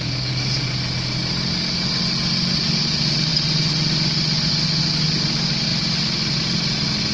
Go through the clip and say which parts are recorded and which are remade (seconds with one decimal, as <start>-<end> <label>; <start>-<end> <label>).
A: 0.0-7.1 recorded